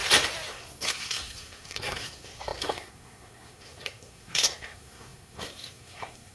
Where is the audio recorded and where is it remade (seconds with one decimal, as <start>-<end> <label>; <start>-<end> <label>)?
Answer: 0.0-0.5 recorded; 0.5-6.3 remade